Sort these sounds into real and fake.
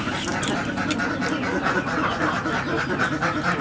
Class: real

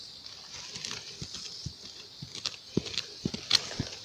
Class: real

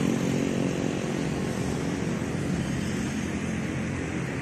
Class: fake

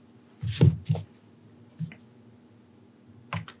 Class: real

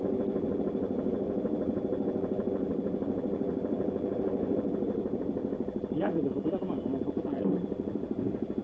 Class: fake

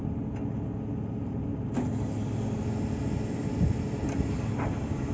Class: real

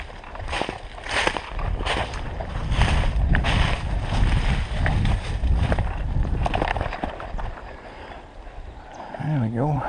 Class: fake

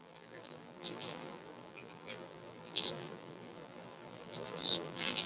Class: fake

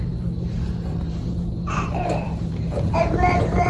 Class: fake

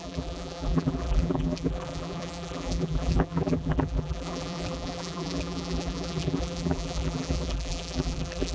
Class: fake